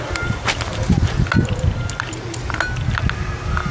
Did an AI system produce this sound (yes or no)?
no